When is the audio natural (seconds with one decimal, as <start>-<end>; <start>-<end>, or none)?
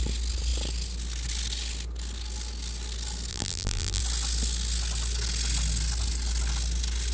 0.0-3.3; 4.0-7.1